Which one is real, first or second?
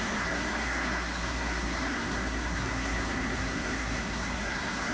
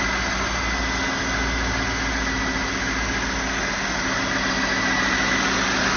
second